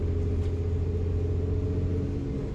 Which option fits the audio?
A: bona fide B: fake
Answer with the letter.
A